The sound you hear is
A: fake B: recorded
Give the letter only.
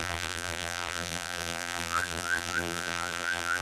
A